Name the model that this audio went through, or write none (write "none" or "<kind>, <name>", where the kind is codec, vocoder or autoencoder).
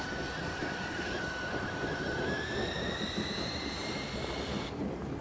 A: none